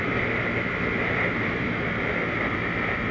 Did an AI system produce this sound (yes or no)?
no